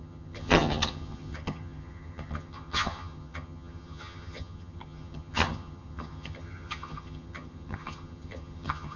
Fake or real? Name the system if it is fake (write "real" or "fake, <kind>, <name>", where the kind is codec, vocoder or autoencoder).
fake, vocoder, HiFi-GAN